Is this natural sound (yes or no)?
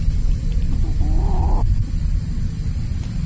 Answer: yes